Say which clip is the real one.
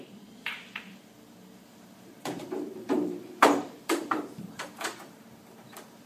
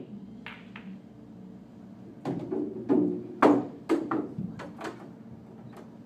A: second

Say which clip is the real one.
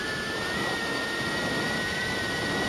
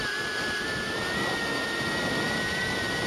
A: second